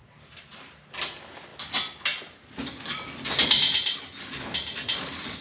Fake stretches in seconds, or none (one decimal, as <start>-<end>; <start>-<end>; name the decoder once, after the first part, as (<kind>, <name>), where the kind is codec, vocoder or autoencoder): none